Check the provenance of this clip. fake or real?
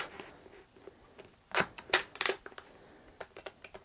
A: real